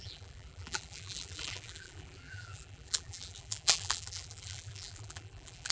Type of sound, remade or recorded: remade